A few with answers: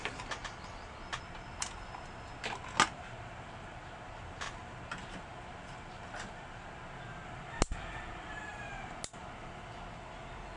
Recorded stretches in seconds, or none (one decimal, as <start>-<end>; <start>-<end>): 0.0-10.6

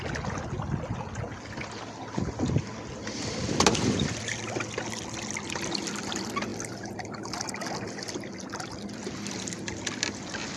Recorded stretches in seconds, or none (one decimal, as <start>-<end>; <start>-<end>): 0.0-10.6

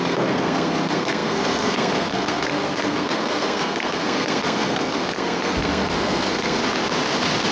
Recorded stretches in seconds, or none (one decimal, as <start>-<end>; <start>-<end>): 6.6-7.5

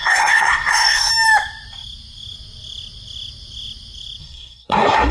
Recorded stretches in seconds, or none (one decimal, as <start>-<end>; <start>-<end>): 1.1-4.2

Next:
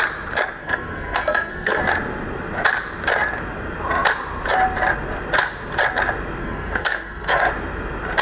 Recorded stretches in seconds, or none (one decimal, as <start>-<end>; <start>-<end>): 0.0-0.6; 1.8-6.4; 7.5-8.2

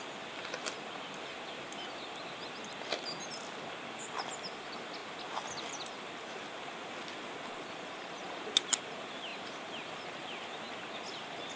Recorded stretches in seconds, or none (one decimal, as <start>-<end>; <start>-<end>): 0.0-11.6

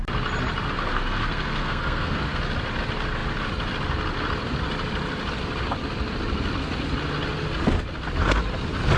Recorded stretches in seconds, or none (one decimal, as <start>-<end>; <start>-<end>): 0.0-0.9; 2.4-9.0